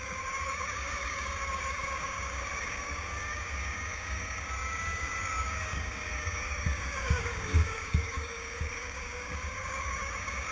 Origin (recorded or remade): remade